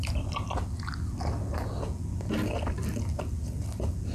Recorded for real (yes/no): yes